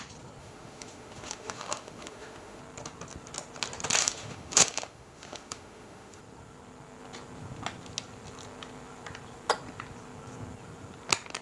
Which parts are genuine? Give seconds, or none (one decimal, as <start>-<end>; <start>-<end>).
0.0-0.4; 2.6-4.0; 6.2-11.4